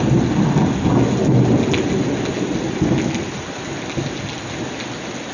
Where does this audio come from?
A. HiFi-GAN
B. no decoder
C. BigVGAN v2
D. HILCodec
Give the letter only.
B